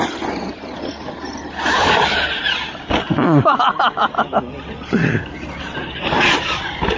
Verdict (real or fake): real